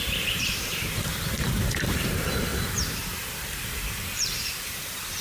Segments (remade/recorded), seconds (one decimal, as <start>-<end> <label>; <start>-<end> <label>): 0.0-2.5 remade; 2.5-3.8 recorded; 3.8-5.2 remade

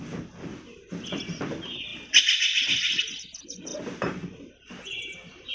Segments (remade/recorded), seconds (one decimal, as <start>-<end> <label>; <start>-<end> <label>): 0.0-1.9 recorded; 1.9-3.2 remade; 3.2-3.7 recorded; 3.7-5.5 remade

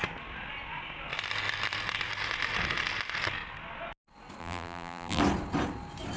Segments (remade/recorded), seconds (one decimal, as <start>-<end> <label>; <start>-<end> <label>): 0.0-4.4 recorded; 4.4-5.2 remade; 5.2-6.2 recorded

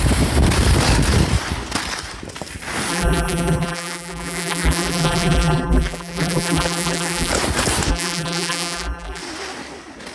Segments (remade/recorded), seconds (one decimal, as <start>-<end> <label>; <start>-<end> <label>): 0.0-2.9 recorded; 2.9-7.3 remade; 7.3-7.9 recorded; 7.9-9.2 remade; 9.2-10.1 recorded

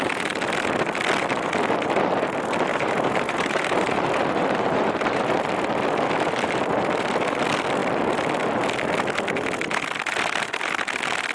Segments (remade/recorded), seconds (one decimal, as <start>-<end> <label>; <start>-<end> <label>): 0.0-2.7 recorded; 2.7-5.2 remade; 5.2-11.3 recorded

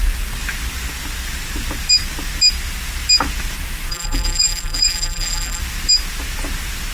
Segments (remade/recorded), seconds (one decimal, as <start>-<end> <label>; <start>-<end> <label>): 0.0-3.9 recorded; 3.9-5.6 remade; 5.6-6.9 recorded

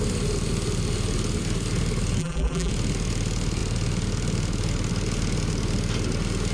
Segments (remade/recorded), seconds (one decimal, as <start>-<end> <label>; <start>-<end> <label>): 0.0-2.2 recorded; 2.2-2.7 remade; 2.7-6.5 recorded

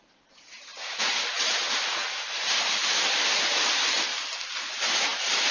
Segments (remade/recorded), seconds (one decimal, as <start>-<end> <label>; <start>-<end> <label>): 0.0-4.1 remade; 4.1-4.8 recorded; 4.8-5.5 remade